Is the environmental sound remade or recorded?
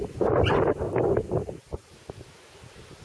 recorded